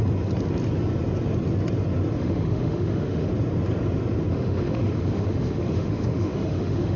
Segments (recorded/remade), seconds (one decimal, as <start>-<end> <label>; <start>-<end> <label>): 0.0-2.2 recorded; 2.2-3.3 remade; 3.3-4.3 recorded; 4.3-7.0 remade